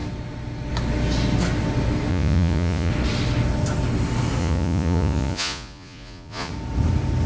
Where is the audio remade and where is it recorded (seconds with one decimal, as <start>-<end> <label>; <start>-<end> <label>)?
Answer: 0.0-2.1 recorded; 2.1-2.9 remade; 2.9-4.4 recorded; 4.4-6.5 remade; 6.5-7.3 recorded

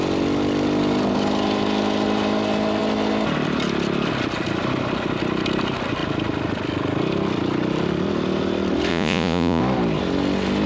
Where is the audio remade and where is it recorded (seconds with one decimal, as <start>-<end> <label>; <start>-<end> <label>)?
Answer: 0.0-8.9 recorded; 8.9-9.6 remade; 9.6-10.7 recorded

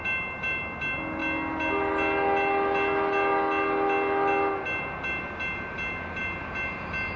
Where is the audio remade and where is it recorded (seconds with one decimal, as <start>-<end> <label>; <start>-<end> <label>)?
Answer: 0.0-7.2 recorded